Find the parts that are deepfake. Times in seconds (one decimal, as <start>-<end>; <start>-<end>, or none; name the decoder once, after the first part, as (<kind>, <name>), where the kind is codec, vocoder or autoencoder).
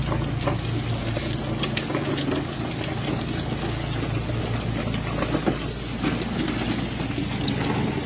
none